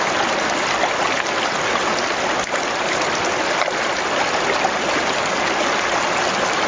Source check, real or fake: real